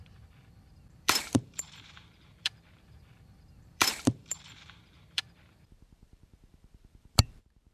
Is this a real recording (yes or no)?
no